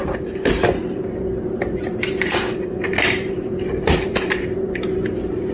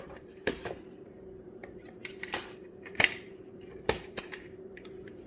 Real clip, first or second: first